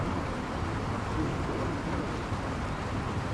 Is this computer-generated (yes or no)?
yes